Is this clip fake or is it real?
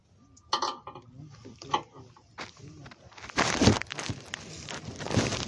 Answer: real